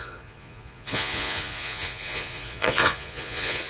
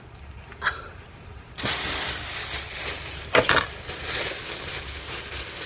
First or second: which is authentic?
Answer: second